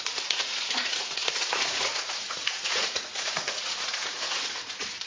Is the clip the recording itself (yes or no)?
no